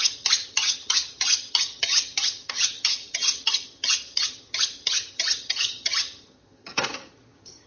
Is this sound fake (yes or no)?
yes